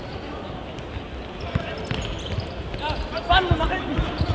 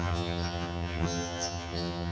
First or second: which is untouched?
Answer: first